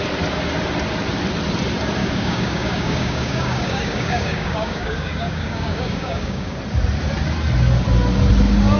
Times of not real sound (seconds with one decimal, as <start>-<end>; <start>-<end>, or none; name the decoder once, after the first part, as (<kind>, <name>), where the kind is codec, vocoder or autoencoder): 2.0-6.6 (codec, DAC)